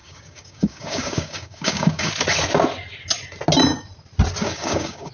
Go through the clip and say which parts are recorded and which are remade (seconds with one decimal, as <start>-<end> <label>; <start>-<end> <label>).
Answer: 0.0-2.1 remade; 2.1-4.4 recorded; 4.4-5.1 remade